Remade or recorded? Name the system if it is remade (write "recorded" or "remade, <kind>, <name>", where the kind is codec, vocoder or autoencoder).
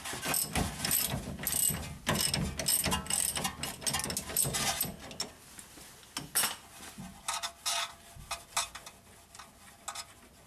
recorded